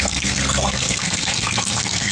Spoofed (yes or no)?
yes